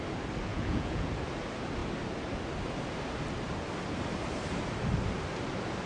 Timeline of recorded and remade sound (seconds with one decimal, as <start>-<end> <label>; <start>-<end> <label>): 0.0-0.5 recorded; 0.5-1.1 remade; 1.1-5.9 recorded